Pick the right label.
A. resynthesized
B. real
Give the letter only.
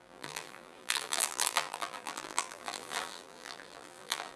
A